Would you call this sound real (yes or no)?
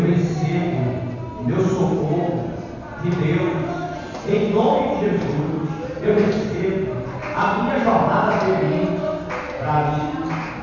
yes